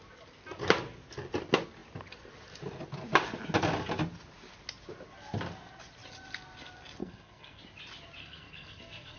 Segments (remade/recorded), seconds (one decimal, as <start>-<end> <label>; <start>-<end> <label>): 0.0-7.0 recorded; 7.0-7.6 remade; 7.6-8.2 recorded; 8.2-9.2 remade